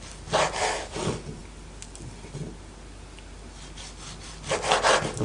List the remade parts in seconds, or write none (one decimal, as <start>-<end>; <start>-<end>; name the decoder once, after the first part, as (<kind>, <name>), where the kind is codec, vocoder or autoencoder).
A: none